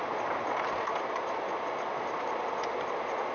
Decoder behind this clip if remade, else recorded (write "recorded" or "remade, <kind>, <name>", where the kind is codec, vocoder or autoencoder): recorded